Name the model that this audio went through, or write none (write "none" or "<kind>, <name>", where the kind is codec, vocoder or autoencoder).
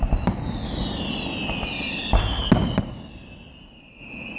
none